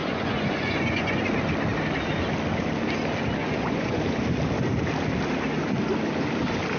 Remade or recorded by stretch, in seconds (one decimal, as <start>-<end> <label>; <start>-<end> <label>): 0.0-1.2 remade; 1.2-3.4 recorded; 3.4-4.0 remade; 4.0-6.8 recorded